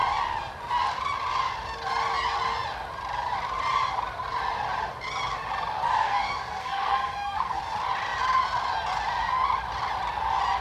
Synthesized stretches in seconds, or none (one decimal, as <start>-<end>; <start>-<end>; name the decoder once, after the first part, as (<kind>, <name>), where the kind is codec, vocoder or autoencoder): 6.0-7.6 (codec, SNAC)